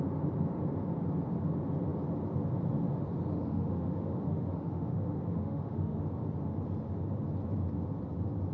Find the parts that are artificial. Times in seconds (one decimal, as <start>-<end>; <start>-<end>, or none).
3.3-6.0